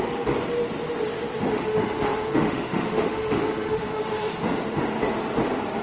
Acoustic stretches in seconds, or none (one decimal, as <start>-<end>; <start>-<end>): 0.0-1.5; 4.4-5.8